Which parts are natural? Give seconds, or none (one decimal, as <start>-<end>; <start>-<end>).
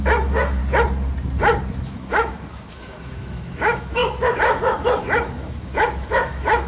0.6-1.8